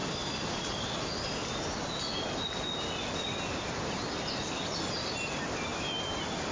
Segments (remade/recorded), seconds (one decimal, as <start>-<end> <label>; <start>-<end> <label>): 0.0-6.5 recorded